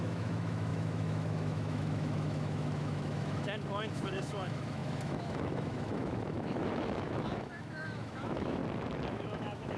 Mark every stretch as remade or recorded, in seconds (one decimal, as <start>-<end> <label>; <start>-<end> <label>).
0.0-8.6 remade; 8.6-9.1 recorded; 9.1-9.8 remade